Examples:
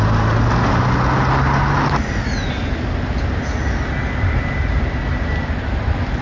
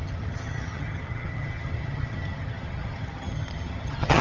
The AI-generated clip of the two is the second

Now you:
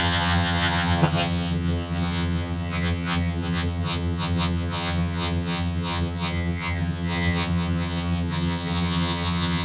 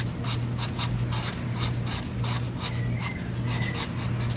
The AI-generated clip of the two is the first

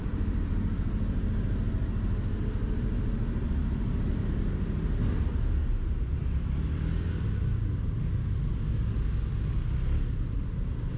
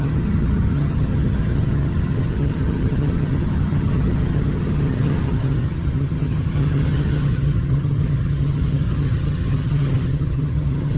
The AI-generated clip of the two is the second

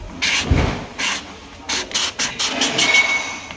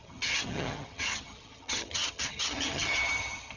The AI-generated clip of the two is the second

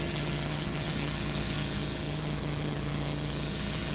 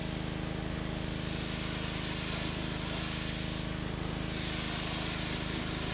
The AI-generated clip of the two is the first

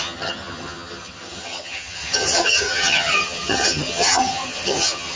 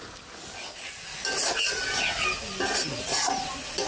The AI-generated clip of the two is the first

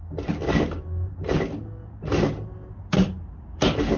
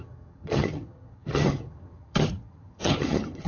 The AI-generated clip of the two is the second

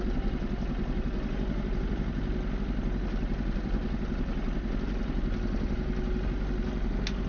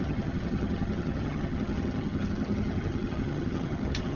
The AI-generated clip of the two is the second